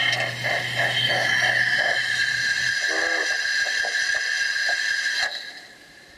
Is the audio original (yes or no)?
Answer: yes